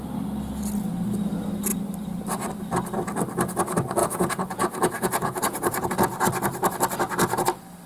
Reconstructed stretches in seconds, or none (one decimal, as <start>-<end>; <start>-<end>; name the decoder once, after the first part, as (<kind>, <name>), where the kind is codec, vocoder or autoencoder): 4.0-5.9 (vocoder, Vocos)